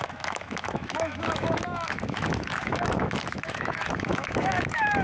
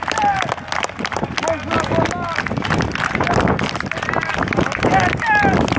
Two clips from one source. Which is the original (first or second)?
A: second